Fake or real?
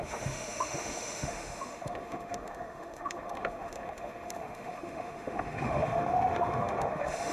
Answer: fake